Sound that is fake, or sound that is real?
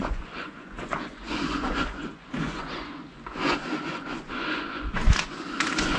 fake